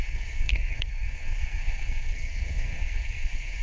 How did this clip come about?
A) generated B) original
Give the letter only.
A